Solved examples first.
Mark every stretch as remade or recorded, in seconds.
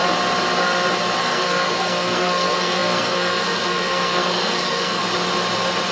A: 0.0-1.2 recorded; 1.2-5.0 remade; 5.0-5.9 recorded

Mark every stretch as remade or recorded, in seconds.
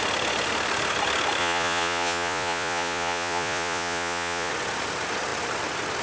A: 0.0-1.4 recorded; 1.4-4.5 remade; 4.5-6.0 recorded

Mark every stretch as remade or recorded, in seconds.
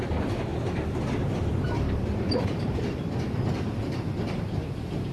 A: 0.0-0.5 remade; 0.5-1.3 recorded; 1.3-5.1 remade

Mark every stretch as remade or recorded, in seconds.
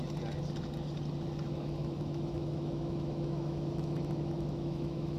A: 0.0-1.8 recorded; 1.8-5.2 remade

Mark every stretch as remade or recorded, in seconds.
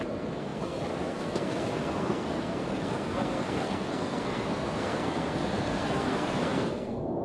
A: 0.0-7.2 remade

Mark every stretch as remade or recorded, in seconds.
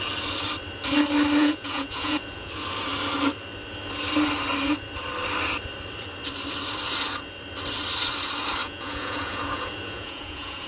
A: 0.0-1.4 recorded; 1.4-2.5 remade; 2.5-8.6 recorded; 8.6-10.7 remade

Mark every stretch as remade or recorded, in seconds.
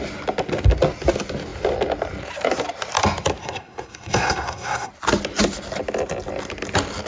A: 0.0-3.4 recorded; 3.4-4.9 remade; 4.9-7.1 recorded